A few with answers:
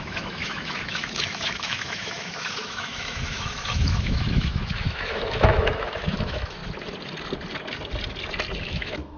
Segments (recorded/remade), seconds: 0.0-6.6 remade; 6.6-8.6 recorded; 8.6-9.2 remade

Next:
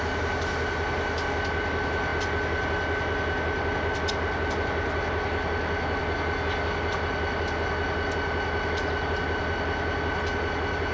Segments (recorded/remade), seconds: 0.0-10.9 recorded

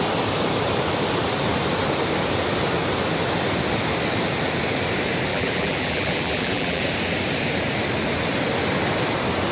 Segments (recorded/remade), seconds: 0.0-5.3 recorded; 5.3-6.8 remade; 6.8-9.5 recorded